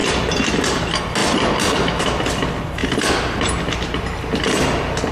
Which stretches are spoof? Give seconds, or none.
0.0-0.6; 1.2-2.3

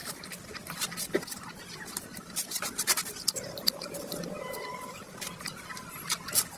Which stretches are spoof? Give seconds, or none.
2.1-5.1